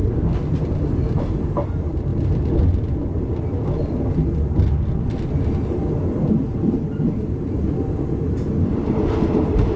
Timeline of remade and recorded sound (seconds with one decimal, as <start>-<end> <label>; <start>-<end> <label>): 0.0-2.1 remade; 2.1-7.1 recorded; 7.1-9.8 remade